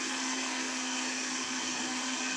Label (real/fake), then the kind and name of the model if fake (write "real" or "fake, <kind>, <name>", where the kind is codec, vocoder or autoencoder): fake, codec, SNAC